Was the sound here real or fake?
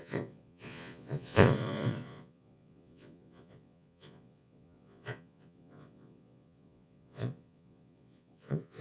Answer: fake